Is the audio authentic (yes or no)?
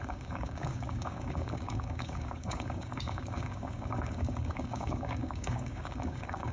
no